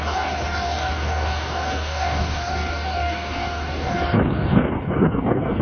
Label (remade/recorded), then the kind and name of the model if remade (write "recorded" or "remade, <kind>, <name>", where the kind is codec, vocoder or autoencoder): remade, codec, DAC